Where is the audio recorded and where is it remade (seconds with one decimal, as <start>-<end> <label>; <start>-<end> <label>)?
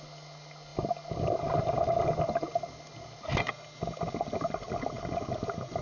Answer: 0.0-5.8 recorded